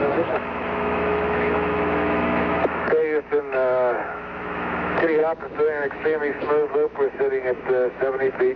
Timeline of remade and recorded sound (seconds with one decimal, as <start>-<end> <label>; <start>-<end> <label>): 0.0-8.6 remade